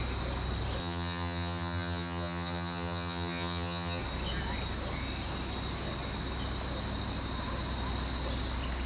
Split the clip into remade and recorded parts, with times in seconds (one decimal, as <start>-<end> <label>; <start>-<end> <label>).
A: 0.0-0.8 recorded; 0.8-4.0 remade; 4.0-8.9 recorded